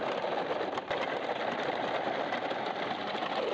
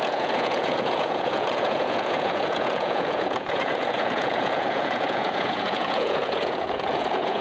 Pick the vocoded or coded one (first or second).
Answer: second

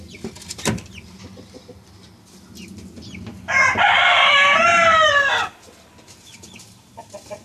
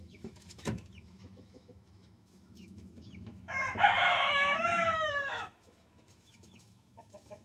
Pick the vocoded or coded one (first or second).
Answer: second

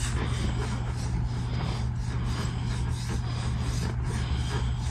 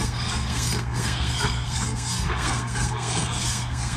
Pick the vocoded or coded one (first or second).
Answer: second